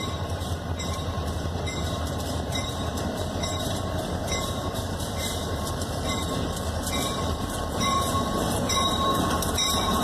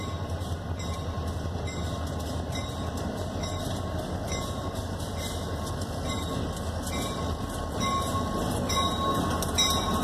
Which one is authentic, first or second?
second